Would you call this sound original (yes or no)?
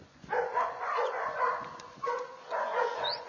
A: no